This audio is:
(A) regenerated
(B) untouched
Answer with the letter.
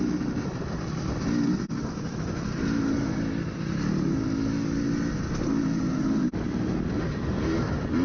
B